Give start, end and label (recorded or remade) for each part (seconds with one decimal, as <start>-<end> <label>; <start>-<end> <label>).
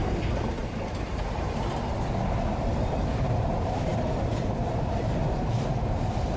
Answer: 0.0-6.4 recorded